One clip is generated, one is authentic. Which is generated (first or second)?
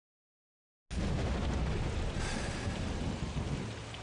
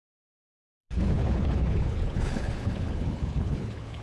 second